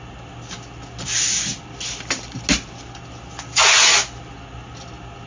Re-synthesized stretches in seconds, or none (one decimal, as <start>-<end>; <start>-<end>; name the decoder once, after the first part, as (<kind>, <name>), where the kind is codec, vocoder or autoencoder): none

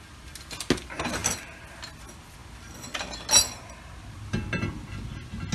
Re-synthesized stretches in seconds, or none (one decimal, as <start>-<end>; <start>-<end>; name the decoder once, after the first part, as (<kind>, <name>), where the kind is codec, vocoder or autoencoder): none

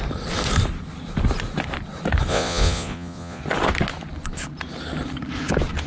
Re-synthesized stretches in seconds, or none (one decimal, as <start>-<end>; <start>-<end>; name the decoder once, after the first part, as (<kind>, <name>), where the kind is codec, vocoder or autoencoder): 2.3-3.4 (vocoder, Vocos)

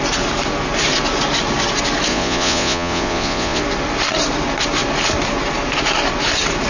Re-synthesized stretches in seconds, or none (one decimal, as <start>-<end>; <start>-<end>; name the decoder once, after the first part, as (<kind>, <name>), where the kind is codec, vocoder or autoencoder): 2.1-3.6 (vocoder, Vocos)

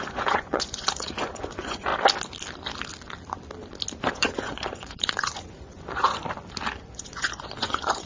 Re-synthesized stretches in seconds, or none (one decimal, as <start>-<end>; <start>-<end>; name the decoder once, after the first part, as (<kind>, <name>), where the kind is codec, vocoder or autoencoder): 0.0-1.9 (vocoder, Vocos); 4.1-6.2; 6.8-8.1

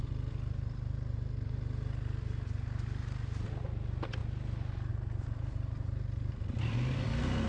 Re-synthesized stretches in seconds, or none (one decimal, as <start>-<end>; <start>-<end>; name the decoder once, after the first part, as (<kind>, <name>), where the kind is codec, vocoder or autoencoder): none

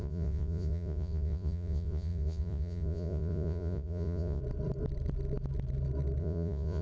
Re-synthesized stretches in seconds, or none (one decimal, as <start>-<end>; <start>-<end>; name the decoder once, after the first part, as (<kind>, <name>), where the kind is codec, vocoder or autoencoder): 0.0-4.4 (vocoder, Vocos); 6.2-6.8